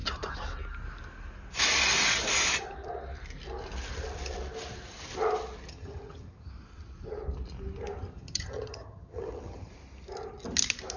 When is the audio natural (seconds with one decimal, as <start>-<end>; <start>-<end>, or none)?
0.0-5.7; 6.5-8.1; 9.7-11.0